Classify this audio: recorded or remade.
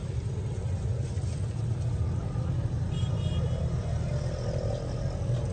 recorded